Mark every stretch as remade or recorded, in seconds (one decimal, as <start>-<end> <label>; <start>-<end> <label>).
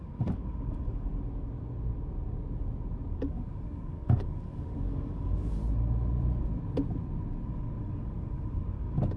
0.0-1.1 remade; 1.1-3.1 recorded; 3.1-5.6 remade; 5.6-7.5 recorded; 7.5-9.2 remade